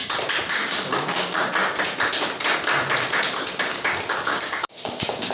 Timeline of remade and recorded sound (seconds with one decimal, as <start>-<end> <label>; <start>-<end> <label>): 0.0-0.5 recorded; 0.5-1.5 remade; 1.5-3.7 recorded; 3.7-5.3 remade